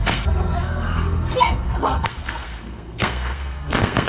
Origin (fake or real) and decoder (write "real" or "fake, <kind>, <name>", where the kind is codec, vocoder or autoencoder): fake, codec, SNAC